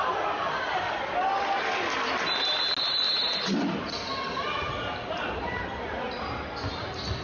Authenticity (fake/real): real